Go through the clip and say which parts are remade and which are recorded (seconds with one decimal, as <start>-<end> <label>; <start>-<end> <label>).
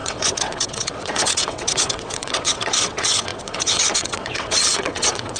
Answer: 0.0-5.4 remade